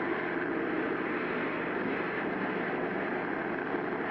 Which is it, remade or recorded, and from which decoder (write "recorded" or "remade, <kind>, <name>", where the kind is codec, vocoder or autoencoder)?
recorded